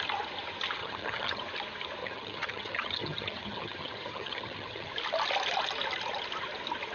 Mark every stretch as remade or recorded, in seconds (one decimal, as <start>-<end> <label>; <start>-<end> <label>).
0.0-0.8 recorded; 0.8-1.4 remade; 1.4-2.0 recorded; 2.0-4.9 remade; 4.9-6.9 recorded